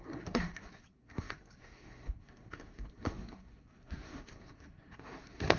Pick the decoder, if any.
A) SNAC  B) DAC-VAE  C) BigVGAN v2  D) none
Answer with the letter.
A